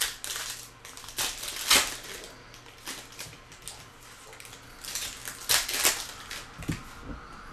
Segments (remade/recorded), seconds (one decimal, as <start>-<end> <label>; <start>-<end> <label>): 0.0-7.5 recorded